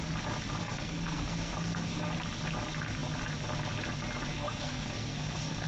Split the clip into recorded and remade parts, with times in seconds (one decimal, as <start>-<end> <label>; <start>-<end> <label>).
0.0-0.6 recorded; 0.6-2.1 remade; 2.1-4.3 recorded; 4.3-5.7 remade